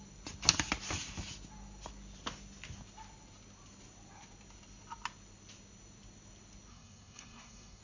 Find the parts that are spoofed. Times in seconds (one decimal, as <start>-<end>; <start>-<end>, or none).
6.7-7.8